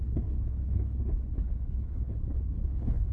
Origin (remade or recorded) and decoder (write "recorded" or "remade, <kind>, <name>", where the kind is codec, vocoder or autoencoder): remade, codec, HILCodec